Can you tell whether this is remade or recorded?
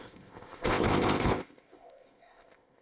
remade